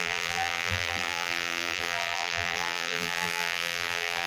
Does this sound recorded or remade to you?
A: remade